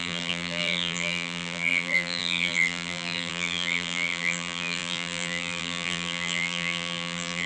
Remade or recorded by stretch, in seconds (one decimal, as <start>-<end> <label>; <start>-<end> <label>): 0.0-7.5 remade